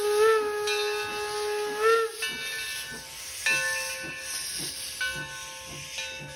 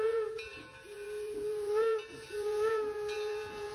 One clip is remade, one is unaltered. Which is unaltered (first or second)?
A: first